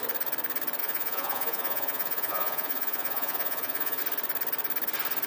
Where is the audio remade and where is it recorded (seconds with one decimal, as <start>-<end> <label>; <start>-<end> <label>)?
0.0-0.8 recorded; 0.8-4.0 remade; 4.0-5.3 recorded

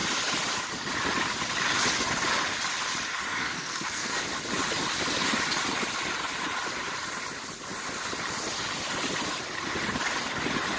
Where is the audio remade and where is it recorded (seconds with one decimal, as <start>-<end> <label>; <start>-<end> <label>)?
0.0-3.3 recorded; 3.3-4.2 remade; 4.2-10.8 recorded